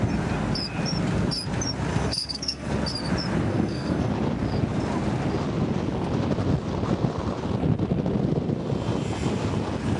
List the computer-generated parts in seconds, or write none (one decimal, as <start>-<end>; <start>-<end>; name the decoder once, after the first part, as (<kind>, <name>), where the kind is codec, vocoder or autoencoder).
1.9-2.7 (codec, SNAC); 3.5-4.1